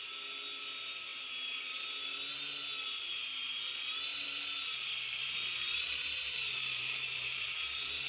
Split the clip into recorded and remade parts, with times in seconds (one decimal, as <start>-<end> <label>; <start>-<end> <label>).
0.0-4.1 recorded; 4.1-8.1 remade